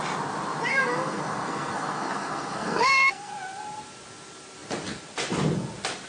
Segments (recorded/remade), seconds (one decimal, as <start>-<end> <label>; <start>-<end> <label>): 0.0-0.7 recorded; 0.7-3.3 remade; 3.3-6.1 recorded